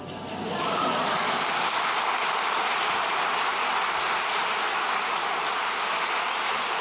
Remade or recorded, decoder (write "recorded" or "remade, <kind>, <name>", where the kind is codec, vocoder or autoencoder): recorded